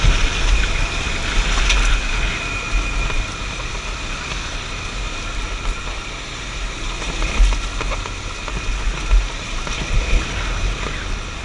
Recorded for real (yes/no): yes